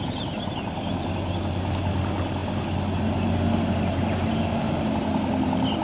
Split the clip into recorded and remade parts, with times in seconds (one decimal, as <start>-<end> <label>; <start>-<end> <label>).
0.0-5.8 recorded